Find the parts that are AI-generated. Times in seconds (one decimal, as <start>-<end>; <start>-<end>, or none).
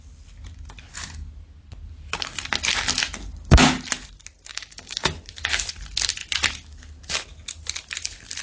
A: 4.5-5.1